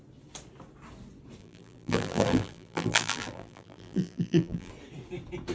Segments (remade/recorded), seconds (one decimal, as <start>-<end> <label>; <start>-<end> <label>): 0.0-1.4 recorded; 1.4-4.7 remade; 4.7-5.5 recorded